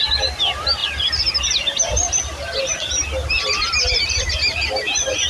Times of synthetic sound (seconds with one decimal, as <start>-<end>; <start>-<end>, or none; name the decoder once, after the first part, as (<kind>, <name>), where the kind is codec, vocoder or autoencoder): none